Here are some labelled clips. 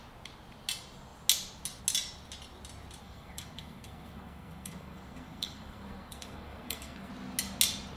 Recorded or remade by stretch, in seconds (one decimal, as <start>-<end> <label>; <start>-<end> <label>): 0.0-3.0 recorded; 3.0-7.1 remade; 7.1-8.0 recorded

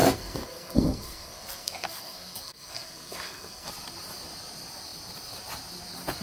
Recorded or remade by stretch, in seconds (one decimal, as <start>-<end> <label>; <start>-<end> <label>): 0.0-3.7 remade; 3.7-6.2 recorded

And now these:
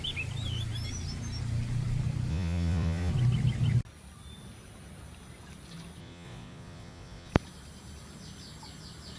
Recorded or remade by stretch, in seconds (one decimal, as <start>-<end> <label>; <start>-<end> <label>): 0.0-2.3 recorded; 2.3-3.1 remade; 3.1-6.0 recorded; 6.0-7.3 remade; 7.3-9.2 recorded